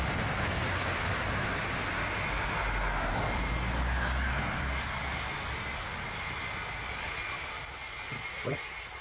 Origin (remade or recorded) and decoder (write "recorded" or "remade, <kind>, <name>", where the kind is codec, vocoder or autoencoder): recorded